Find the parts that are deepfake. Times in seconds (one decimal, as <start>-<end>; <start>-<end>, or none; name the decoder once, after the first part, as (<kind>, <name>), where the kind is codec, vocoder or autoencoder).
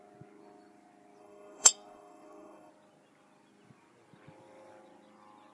1.2-2.7 (codec, SNAC)